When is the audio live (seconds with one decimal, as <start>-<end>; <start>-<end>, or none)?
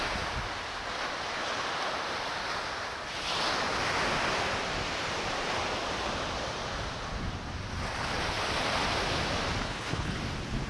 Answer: 0.0-9.6; 10.2-10.7